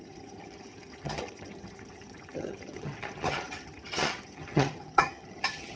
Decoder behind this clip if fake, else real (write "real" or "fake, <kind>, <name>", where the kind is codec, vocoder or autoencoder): fake, vocoder, HiFi-GAN